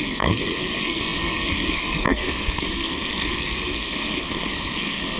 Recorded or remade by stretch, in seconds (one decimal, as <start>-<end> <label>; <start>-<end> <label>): 0.0-5.2 remade